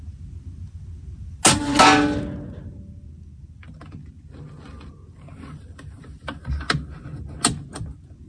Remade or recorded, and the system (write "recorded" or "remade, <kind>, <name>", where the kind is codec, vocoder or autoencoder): recorded